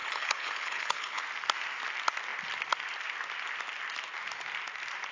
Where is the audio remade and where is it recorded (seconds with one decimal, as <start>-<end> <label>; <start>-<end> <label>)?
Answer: 0.0-1.2 remade; 1.2-5.1 recorded